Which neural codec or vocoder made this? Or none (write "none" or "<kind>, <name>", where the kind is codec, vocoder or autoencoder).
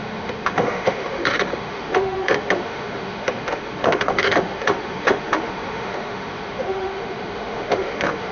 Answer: autoencoder, DAC-VAE